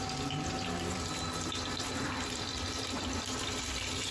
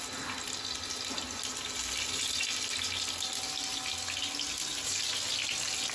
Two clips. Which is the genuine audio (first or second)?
second